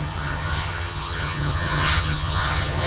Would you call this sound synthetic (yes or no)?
yes